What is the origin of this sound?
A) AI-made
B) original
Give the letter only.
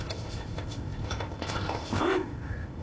A